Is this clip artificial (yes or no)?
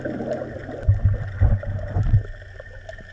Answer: no